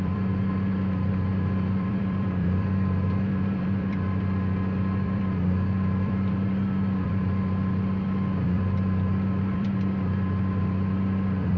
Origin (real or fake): fake